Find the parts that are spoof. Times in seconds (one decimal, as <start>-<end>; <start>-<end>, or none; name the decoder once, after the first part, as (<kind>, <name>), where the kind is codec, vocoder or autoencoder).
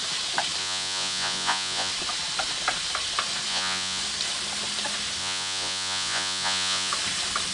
0.6-1.9 (vocoder, Vocos); 3.5-4.0; 5.2-6.9